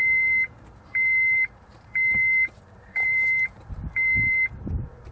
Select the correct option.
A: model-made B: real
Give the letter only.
A